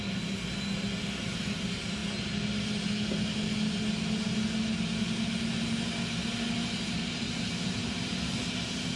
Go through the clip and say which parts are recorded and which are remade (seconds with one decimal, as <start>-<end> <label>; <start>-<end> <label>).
0.0-9.0 recorded